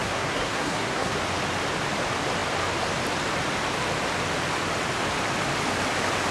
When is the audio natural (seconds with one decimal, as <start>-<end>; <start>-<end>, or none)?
1.1-6.3